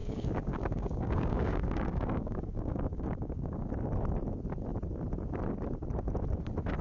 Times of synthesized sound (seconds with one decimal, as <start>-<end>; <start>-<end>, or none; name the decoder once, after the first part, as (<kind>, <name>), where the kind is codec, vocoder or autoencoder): 0.0-3.7 (codec, DAC)